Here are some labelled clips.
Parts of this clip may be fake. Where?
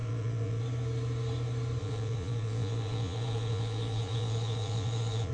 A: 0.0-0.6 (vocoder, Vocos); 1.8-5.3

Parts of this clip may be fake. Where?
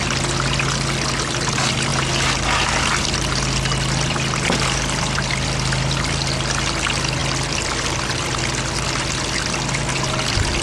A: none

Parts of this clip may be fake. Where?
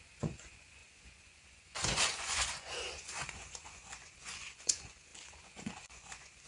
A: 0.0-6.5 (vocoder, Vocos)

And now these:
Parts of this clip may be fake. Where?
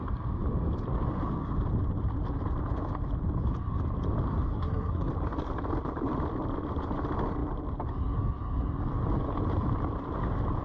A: 4.5-5.1 (codec, SNAC)